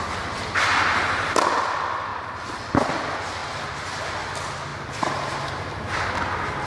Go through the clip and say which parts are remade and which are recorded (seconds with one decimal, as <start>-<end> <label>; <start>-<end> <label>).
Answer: 0.0-4.7 recorded; 4.7-5.5 remade; 5.5-6.7 recorded